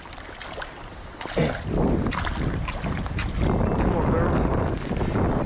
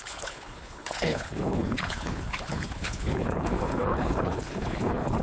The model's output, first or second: second